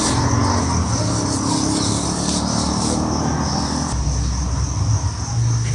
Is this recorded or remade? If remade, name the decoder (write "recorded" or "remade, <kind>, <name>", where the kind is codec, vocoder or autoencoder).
recorded